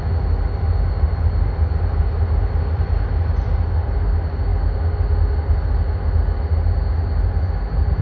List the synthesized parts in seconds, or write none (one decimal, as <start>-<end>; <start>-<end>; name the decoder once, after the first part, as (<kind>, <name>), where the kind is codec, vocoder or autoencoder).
none